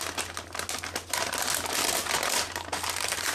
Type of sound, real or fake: real